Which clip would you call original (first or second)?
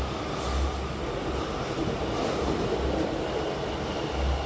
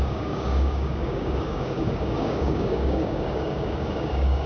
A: first